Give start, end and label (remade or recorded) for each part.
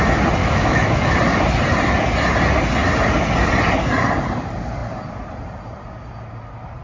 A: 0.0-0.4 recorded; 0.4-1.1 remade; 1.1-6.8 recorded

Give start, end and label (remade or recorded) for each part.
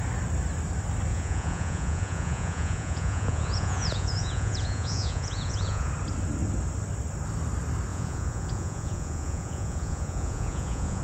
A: 0.0-1.1 recorded; 1.1-5.9 remade; 5.9-7.9 recorded; 7.9-11.0 remade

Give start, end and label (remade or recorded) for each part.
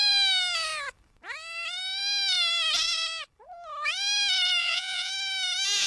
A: 0.0-4.6 recorded; 4.6-5.1 remade; 5.1-5.9 recorded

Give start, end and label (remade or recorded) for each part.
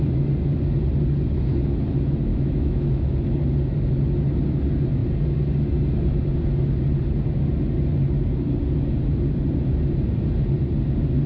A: 0.0-2.3 recorded; 2.3-3.1 remade; 3.1-11.3 recorded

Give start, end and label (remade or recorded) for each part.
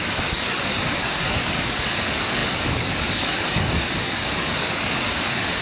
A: 0.0-5.6 remade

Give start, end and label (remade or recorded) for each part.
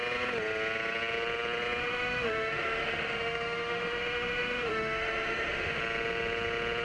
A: 0.0-1.8 recorded; 1.8-5.8 remade; 5.8-6.8 recorded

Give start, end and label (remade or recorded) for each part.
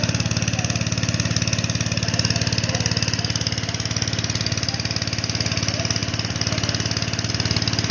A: 0.0-7.9 recorded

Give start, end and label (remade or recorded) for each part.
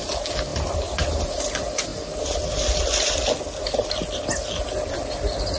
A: 0.0-5.6 recorded